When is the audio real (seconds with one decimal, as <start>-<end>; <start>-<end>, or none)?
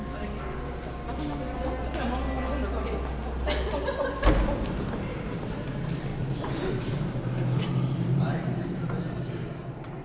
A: 0.0-6.1; 9.5-10.0